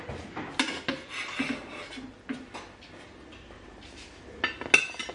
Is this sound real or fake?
real